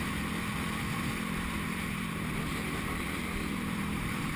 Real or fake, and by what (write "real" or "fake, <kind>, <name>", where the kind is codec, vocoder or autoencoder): fake, vocoder, BigVGAN v2